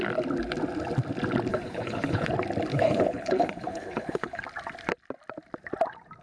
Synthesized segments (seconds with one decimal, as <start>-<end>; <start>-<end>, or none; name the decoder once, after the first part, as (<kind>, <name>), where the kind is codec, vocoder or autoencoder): 1.5-2.3 (codec, HILCodec); 2.7-4.4